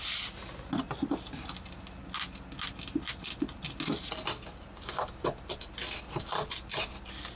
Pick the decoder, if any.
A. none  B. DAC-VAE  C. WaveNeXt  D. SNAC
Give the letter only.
A